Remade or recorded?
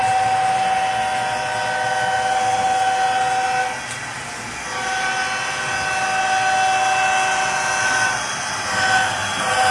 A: recorded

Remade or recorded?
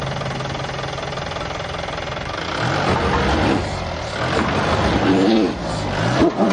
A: recorded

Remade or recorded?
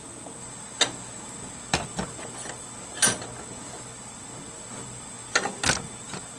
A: recorded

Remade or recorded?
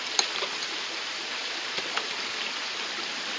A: recorded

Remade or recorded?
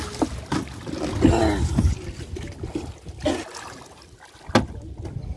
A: recorded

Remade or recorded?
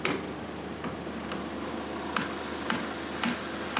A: recorded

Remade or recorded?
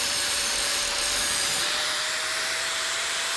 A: remade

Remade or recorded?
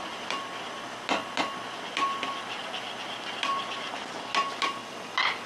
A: recorded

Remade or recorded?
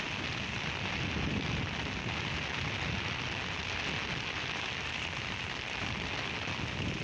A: recorded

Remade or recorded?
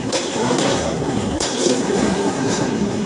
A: remade